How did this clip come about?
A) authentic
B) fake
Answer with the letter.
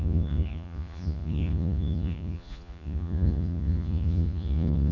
B